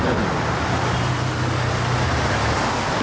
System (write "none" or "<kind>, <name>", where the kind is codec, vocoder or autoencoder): none